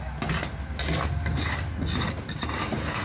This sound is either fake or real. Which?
real